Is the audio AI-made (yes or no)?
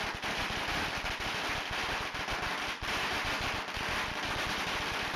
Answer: no